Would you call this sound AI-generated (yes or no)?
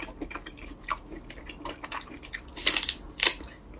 no